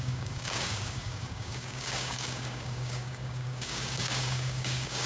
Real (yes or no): no